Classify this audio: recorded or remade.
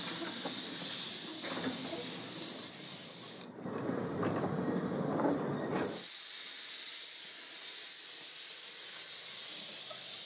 recorded